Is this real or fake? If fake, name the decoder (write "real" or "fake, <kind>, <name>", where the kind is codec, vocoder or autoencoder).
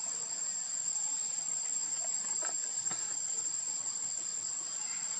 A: real